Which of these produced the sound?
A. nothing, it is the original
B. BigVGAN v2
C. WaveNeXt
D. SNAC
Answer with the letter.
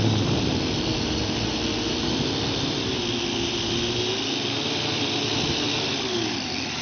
A